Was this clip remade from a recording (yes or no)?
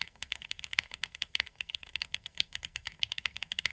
yes